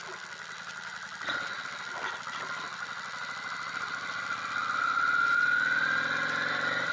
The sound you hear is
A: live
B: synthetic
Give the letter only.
A